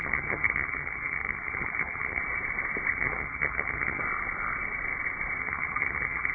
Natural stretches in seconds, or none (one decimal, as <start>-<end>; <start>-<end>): 2.2-2.9; 4.0-5.4